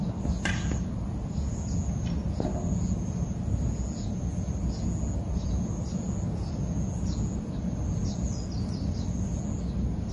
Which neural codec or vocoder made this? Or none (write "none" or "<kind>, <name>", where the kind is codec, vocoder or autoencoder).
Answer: none